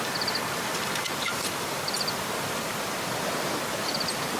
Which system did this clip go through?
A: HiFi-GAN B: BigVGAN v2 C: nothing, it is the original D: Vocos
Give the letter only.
B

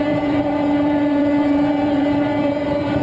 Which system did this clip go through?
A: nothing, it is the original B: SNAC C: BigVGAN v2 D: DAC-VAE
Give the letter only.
C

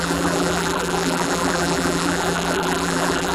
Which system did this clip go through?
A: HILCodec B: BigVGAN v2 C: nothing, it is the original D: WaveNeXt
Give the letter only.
B